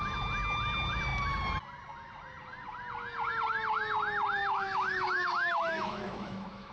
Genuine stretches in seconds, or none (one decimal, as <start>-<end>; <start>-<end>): 0.0-4.4